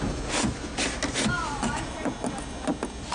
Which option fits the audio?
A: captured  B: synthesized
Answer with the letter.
A